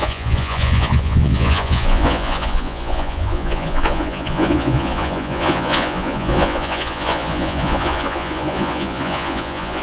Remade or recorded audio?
remade